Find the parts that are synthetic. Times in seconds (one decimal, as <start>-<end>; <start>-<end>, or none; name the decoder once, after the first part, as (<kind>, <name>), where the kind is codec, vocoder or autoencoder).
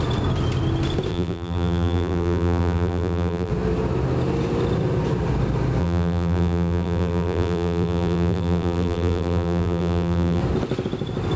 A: 1.1-3.5 (vocoder, BigVGAN v2); 5.8-10.4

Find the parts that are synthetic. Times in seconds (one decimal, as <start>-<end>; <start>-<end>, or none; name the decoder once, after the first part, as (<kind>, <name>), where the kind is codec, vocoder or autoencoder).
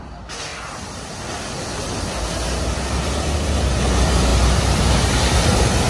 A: none